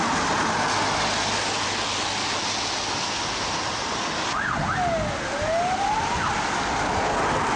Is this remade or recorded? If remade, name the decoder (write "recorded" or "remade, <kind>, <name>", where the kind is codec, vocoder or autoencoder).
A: recorded